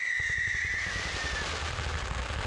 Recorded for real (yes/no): yes